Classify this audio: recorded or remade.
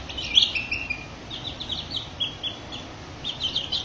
recorded